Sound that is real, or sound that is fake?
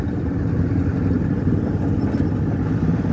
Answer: real